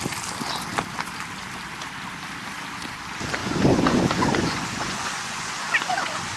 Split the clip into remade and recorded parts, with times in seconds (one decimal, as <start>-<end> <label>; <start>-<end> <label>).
0.0-3.4 recorded; 3.4-6.4 remade